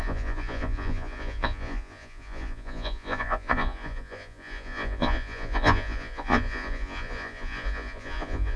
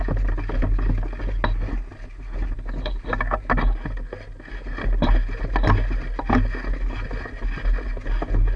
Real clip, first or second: second